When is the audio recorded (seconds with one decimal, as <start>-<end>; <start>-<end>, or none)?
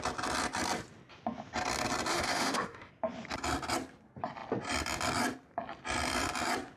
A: 0.0-2.1; 2.9-6.8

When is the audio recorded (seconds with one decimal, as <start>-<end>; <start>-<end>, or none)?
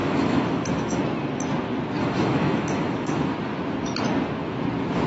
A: 1.0-2.0; 3.3-5.1